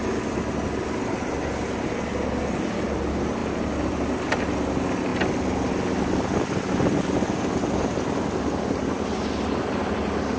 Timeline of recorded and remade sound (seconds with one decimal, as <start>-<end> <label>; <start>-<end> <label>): 0.0-10.4 recorded